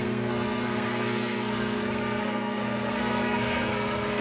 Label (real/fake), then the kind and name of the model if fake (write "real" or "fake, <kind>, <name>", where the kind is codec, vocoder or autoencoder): fake, codec, SNAC